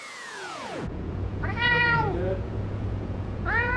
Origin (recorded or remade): remade